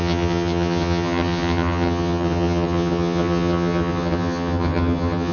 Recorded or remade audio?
remade